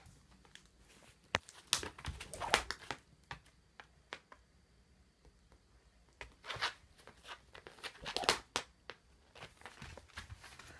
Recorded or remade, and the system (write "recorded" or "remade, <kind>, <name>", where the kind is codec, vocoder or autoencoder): recorded